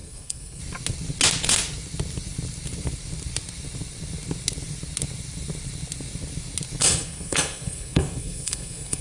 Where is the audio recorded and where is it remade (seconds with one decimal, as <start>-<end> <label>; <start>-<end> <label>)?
0.0-0.6 remade; 0.6-6.8 recorded; 6.8-9.0 remade